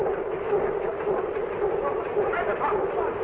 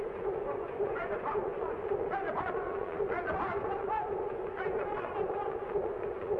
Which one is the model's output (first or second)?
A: second